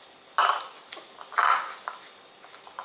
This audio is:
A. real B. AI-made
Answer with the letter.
A